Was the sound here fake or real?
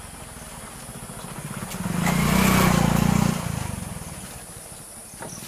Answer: real